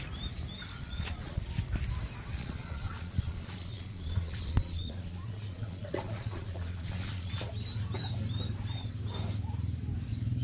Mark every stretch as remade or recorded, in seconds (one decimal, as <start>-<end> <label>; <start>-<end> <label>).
0.0-0.8 recorded; 0.8-1.4 remade; 1.4-2.3 recorded; 2.3-7.4 remade; 7.4-10.4 recorded